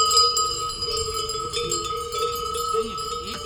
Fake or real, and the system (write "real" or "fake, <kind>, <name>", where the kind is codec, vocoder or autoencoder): real